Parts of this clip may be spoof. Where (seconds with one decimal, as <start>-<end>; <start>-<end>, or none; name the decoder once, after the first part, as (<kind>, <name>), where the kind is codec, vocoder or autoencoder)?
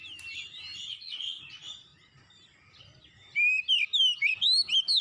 0.9-1.4 (vocoder, WaveNeXt)